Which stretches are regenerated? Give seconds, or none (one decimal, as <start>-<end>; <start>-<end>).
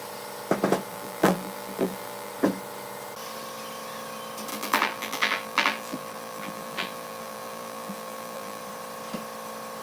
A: 0.9-2.3; 4.5-8.6